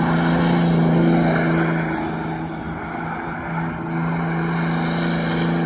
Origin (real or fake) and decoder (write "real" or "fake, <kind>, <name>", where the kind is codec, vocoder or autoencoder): real